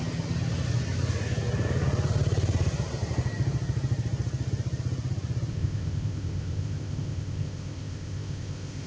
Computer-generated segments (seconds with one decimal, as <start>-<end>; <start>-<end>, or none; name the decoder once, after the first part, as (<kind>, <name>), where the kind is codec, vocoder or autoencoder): 5.5-8.9 (codec, ZipCodec)